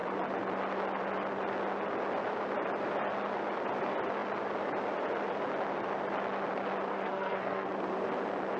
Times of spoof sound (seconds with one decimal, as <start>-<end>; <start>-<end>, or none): 6.9-7.7

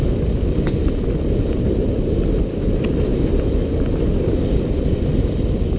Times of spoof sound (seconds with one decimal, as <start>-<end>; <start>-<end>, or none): none

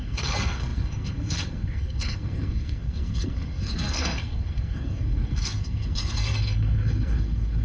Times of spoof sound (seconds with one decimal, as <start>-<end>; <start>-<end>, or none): 0.0-7.6

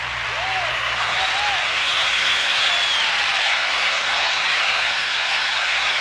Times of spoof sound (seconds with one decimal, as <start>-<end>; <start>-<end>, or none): 0.7-1.2; 1.6-2.7; 3.4-6.0

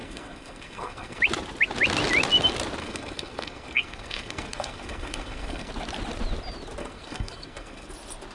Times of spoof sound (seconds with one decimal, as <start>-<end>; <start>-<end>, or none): 0.0-1.2; 2.8-5.7; 6.8-7.9

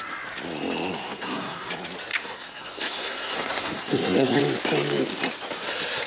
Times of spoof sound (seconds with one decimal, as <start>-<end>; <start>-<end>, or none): 1.0-1.7; 2.1-4.4

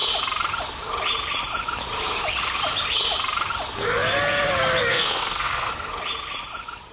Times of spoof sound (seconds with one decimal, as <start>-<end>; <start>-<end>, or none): 4.9-5.7